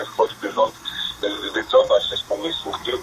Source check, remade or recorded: remade